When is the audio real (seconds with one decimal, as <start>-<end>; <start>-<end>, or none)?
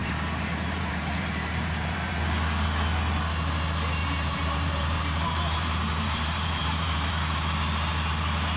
2.1-4.0; 7.1-8.6